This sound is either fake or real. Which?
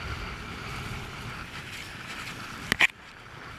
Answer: real